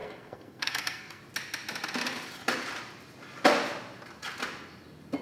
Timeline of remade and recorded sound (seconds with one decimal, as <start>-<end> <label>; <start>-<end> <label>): 0.0-1.2 remade; 1.2-5.2 recorded